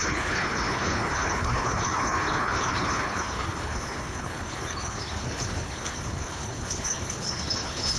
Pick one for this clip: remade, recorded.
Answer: remade